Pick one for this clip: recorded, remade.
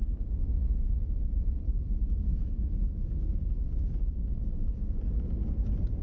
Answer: recorded